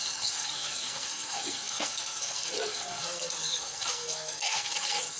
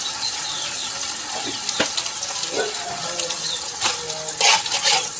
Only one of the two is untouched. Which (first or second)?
second